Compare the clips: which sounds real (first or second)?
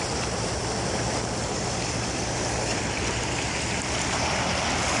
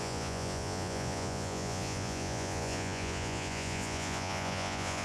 first